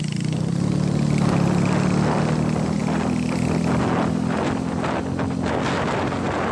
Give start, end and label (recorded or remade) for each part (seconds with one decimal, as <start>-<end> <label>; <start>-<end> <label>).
0.0-6.5 recorded